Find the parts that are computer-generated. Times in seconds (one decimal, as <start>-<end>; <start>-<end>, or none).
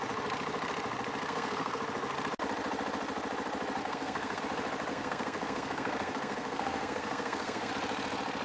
1.2-1.8; 3.8-4.4; 4.9-7.7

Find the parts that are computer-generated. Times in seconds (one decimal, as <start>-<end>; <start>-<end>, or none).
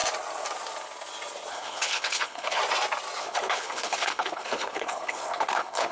1.5-2.6; 3.2-5.9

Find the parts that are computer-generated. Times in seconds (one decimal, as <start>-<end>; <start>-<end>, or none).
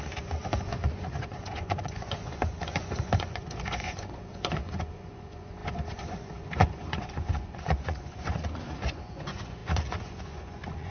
0.0-10.9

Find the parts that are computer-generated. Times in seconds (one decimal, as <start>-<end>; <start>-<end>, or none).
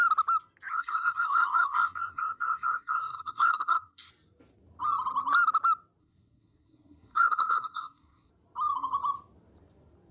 0.7-4.1; 6.0-8.3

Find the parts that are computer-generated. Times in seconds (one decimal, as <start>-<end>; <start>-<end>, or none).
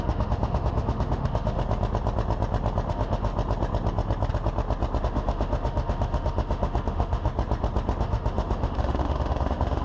0.0-1.6; 2.9-3.3; 5.0-7.3; 8.0-9.8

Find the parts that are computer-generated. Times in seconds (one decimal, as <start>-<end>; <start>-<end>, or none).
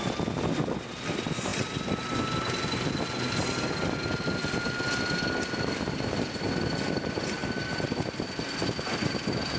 none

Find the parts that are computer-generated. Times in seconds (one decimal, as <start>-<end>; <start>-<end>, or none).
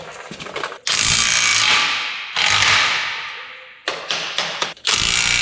none